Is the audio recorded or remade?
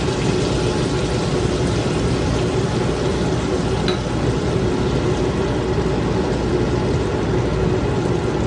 recorded